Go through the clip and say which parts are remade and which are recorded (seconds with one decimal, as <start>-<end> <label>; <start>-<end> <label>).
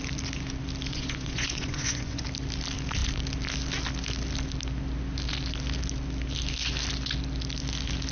0.0-0.9 recorded; 0.9-2.2 remade; 2.2-8.1 recorded